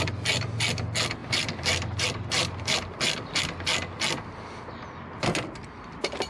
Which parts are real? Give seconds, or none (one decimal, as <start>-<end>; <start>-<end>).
0.0-1.2; 3.4-6.3